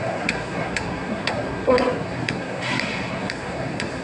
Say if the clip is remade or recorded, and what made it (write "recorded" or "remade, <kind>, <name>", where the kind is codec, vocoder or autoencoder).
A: remade, codec, SNAC